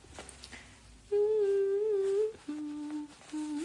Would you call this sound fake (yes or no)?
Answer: no